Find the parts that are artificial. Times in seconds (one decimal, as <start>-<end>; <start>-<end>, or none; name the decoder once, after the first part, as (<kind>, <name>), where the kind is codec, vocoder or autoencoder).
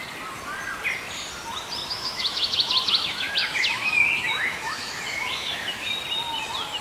1.8-5.9 (autoencoder, DAC-VAE)